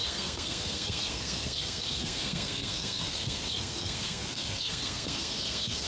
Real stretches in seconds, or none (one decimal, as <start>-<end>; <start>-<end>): none

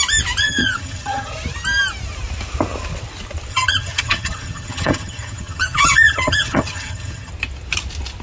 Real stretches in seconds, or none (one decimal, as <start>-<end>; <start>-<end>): 0.0-0.4; 1.3-3.5; 7.3-8.2

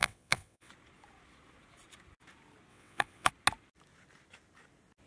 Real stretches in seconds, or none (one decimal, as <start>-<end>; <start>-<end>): 0.7-2.7; 3.3-5.1

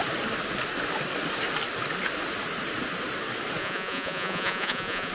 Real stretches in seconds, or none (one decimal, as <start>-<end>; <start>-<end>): 0.0-3.6

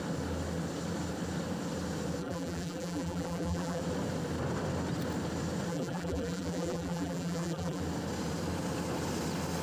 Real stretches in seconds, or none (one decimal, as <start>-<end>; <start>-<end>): 0.0-2.2; 3.8-5.7; 7.8-9.6

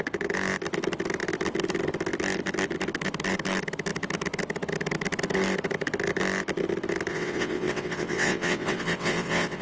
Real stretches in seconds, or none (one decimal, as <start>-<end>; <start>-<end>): 0.0-7.1

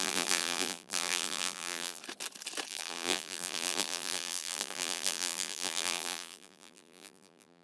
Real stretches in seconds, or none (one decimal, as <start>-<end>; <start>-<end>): 2.0-2.7

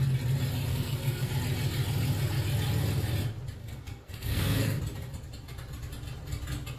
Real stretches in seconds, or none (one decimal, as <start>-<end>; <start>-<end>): 0.0-0.7; 1.3-3.6; 4.8-6.8